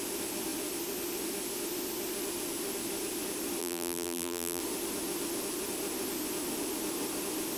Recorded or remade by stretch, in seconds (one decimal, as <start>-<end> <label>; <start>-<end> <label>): 0.0-3.6 recorded; 3.6-4.6 remade; 4.6-7.6 recorded